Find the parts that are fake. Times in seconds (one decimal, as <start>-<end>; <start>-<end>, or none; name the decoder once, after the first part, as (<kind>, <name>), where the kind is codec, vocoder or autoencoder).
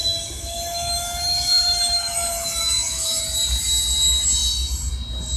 0.0-3.2 (autoencoder, DAC-VAE)